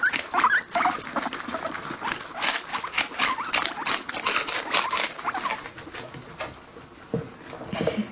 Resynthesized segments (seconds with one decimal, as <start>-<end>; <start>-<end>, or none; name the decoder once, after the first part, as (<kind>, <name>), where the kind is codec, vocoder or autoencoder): none